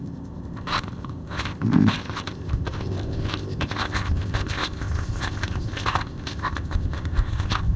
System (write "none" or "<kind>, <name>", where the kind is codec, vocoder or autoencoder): codec, ZipCodec